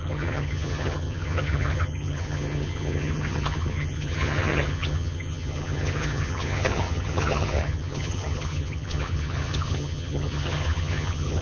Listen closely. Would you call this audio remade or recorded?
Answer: remade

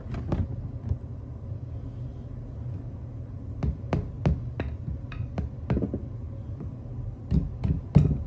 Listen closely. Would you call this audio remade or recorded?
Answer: recorded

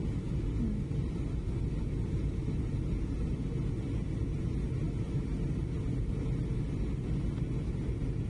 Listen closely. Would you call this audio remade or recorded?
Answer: recorded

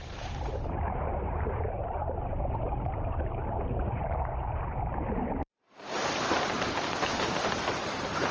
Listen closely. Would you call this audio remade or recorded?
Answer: remade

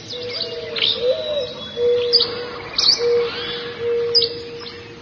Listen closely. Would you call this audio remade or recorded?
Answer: recorded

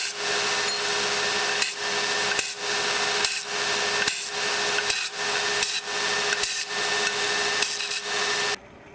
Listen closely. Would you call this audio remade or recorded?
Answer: recorded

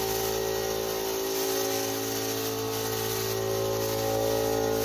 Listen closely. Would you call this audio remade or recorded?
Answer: recorded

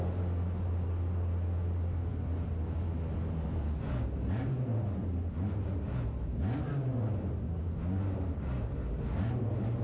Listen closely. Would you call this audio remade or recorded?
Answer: recorded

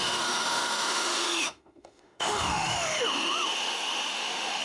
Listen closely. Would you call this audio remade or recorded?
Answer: remade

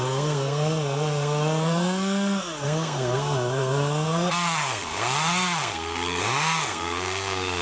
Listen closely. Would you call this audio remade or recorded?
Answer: remade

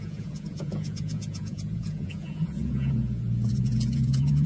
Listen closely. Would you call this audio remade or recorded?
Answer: remade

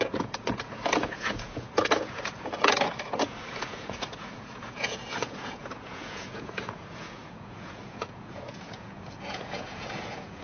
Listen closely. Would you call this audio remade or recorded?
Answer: remade